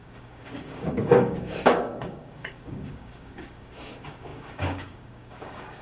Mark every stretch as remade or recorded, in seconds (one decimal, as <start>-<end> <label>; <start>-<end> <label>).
0.0-5.8 remade